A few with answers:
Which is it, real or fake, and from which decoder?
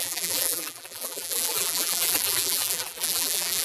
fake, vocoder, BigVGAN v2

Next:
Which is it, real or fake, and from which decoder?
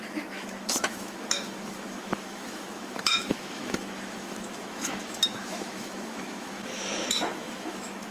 fake, autoencoder, DAC-VAE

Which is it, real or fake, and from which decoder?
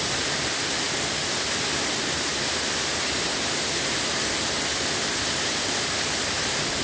real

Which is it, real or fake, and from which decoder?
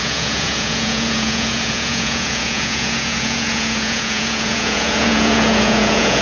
fake, vocoder, Vocos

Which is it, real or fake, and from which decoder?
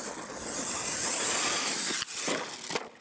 real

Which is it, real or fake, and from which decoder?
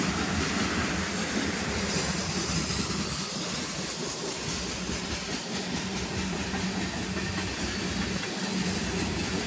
real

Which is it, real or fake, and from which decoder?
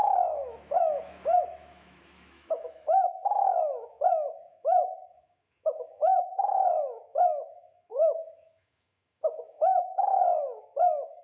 fake, autoencoder, DAC-VAE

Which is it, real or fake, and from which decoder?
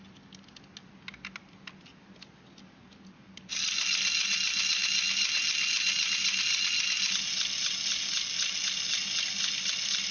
real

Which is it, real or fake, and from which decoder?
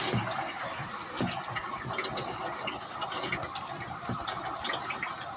real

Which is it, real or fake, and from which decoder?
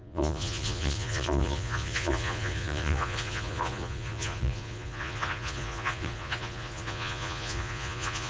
fake, vocoder, Vocos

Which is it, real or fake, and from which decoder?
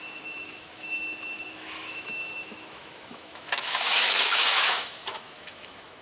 fake, autoencoder, DAC-VAE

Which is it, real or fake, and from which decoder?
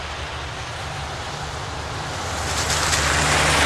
real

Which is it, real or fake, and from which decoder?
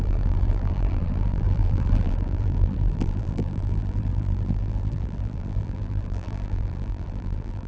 fake, vocoder, BigVGAN v2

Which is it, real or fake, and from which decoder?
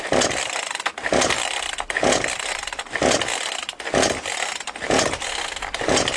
real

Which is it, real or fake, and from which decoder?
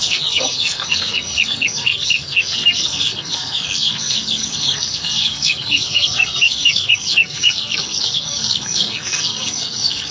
fake, codec, SNAC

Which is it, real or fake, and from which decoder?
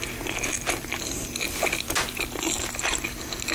real